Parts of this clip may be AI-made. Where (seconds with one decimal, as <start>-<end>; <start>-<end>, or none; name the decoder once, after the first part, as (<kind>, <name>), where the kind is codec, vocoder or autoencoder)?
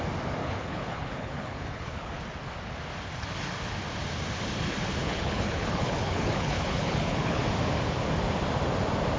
0.4-2.2 (codec, HILCodec); 5.0-7.4